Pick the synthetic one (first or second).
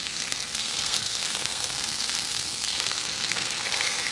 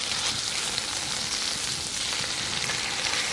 first